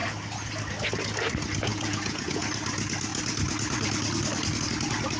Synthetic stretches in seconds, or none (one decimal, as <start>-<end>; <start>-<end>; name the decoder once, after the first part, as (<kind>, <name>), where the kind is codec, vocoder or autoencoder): 1.7-2.4 (vocoder, Vocos)